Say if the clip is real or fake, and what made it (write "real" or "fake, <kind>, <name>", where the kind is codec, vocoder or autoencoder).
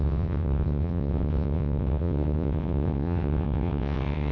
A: fake, vocoder, WaveNeXt